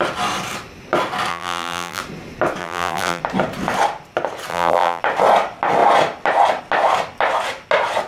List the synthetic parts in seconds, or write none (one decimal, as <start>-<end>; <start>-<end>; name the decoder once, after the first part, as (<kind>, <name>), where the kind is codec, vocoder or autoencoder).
1.3-2.0 (vocoder, BigVGAN v2); 2.6-3.2; 4.5-5.0